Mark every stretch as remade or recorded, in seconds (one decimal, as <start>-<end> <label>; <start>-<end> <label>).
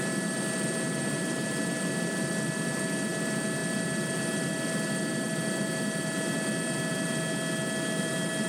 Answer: 0.0-8.5 recorded